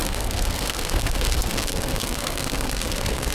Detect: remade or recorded remade